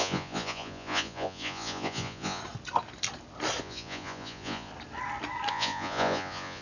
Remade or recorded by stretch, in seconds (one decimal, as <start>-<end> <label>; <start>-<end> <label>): 0.0-2.4 remade; 2.4-3.6 recorded; 3.6-4.7 remade; 4.7-5.5 recorded; 5.5-6.6 remade